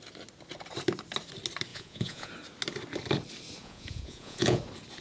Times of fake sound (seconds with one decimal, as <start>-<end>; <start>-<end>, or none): 1.7-2.3; 3.6-4.6